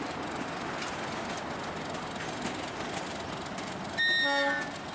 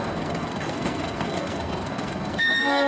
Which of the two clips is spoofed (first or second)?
second